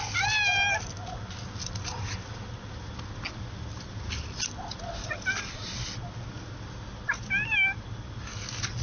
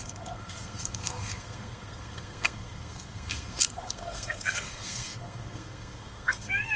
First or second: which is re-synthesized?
second